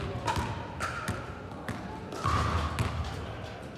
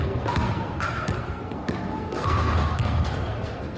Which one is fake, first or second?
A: second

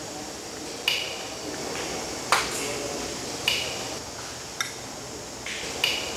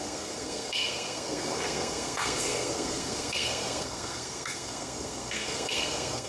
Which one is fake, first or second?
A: second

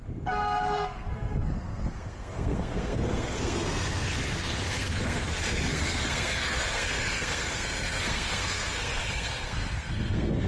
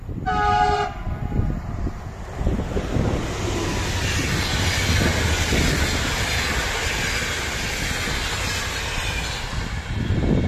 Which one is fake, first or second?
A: first